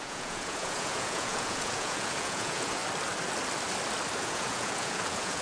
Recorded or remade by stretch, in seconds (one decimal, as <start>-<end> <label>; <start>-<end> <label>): 0.0-2.8 remade; 2.8-4.2 recorded; 4.2-5.4 remade